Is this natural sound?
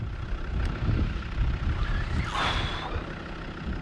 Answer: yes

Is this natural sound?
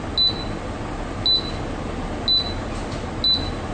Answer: yes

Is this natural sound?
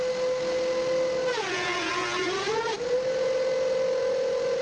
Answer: yes